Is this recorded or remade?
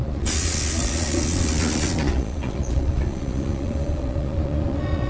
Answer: remade